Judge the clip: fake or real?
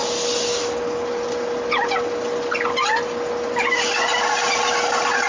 real